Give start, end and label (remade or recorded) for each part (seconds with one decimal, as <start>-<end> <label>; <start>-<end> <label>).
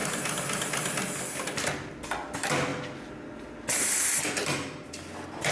0.0-5.5 recorded